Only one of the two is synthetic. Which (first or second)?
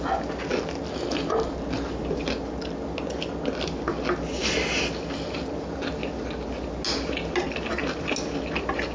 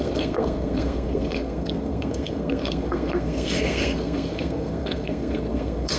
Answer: second